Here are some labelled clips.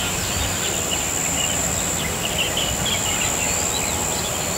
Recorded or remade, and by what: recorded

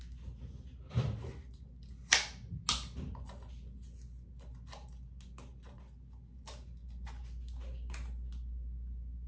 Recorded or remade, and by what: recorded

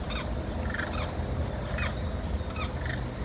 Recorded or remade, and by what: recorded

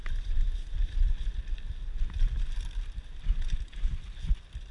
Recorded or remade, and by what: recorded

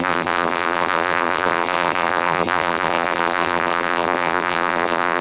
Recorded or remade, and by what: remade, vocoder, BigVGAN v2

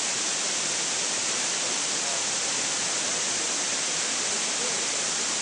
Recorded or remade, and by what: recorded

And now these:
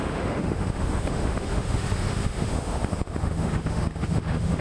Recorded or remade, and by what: remade, autoencoder, DAC-VAE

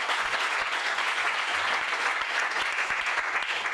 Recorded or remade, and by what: remade, vocoder, Vocos